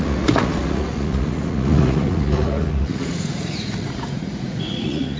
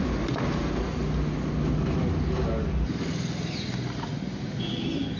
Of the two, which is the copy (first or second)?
first